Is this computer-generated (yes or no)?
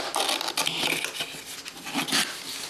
no